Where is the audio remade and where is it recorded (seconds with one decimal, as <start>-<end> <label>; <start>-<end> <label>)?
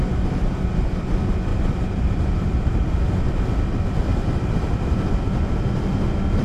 0.0-1.5 recorded; 1.5-2.9 remade; 2.9-4.1 recorded; 4.1-5.1 remade; 5.1-6.4 recorded